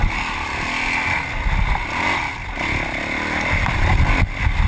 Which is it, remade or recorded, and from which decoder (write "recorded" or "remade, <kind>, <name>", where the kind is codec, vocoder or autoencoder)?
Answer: recorded